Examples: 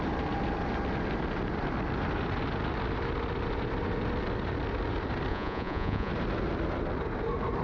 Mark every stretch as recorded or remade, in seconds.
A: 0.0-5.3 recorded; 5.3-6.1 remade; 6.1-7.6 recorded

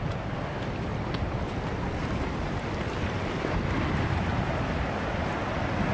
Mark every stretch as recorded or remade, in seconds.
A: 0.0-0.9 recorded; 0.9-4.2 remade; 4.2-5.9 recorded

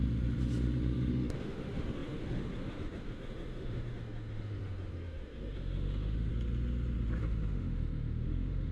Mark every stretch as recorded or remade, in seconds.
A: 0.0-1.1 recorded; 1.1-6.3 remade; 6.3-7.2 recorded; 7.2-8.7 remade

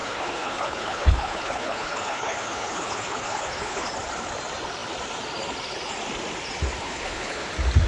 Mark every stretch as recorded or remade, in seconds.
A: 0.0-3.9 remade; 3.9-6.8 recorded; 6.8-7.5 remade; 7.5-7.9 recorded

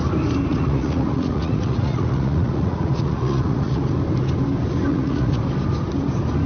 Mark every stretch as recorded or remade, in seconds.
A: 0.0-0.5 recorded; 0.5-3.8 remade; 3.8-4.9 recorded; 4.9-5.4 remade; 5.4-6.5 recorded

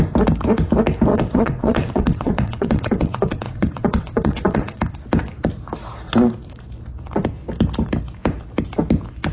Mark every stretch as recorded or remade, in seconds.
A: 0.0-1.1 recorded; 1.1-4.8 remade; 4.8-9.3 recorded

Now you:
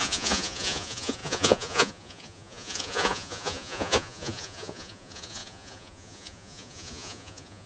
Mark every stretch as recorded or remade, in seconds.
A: 0.0-7.7 remade